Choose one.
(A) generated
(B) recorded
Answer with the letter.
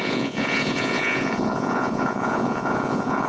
A